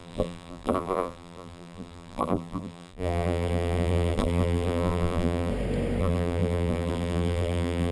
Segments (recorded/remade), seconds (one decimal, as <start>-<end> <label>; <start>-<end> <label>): 0.0-5.5 remade; 5.5-6.0 recorded; 6.0-7.9 remade